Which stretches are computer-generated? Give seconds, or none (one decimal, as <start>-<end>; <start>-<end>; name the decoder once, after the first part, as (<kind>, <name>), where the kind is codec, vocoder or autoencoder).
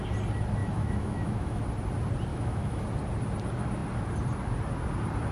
0.6-1.6 (autoencoder, DAC-VAE); 2.3-2.8